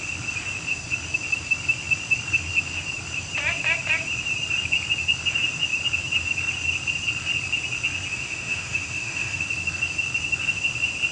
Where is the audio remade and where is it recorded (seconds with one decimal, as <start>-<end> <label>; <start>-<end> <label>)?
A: 0.0-8.1 recorded; 8.1-9.5 remade; 9.5-11.1 recorded